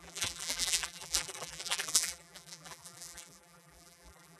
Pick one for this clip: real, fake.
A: fake